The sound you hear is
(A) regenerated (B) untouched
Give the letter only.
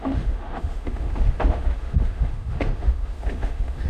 A